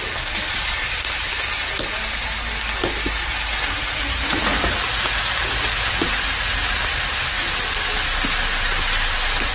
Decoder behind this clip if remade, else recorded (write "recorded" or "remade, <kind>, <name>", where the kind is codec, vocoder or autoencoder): recorded